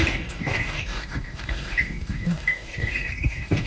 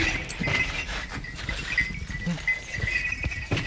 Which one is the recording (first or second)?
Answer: second